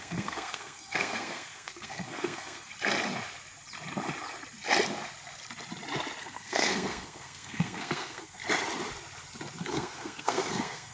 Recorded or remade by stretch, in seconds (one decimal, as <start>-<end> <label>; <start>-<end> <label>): 0.0-2.7 remade; 2.7-6.2 recorded; 6.2-8.4 remade; 8.4-9.6 recorded; 9.6-10.9 remade

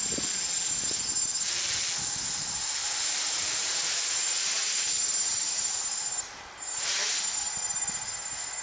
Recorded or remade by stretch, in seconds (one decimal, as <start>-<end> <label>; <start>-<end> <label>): 0.0-2.8 recorded; 2.8-6.3 remade; 6.3-8.6 recorded

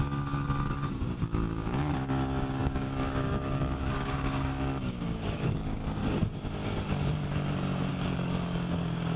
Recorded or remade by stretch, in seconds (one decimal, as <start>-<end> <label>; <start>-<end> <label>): 0.0-6.0 remade; 6.0-7.9 recorded; 7.9-9.2 remade

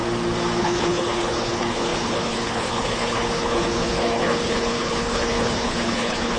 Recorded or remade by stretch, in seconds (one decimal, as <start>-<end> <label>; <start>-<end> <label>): 0.0-0.6 recorded; 0.6-6.4 remade

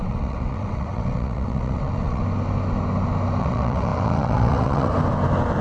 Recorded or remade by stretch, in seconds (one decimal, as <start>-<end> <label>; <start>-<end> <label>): 0.0-2.2 remade; 2.2-3.4 recorded; 3.4-4.9 remade; 4.9-5.6 recorded

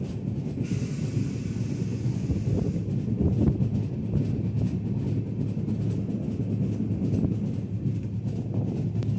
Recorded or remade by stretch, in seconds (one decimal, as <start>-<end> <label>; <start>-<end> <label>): 0.0-1.9 recorded; 1.9-2.4 remade; 2.4-9.2 recorded